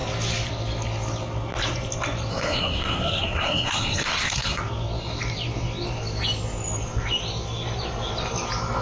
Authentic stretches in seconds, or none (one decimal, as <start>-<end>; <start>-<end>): 0.0-2.3; 4.6-8.8